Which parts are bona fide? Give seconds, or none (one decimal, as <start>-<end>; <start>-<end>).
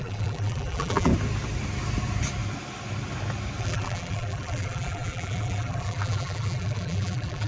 1.1-3.6